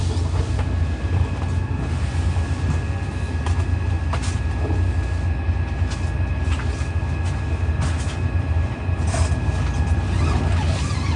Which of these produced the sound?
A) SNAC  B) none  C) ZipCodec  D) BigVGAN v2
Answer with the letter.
B